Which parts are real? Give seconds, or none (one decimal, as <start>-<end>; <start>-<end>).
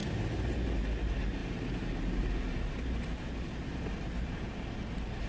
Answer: 0.0-5.3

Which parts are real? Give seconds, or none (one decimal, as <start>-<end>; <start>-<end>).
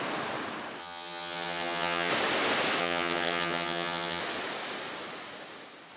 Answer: 0.0-0.8; 2.1-2.8; 4.2-6.0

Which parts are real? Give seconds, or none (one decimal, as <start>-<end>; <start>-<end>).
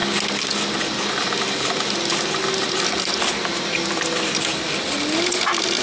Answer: 0.0-5.8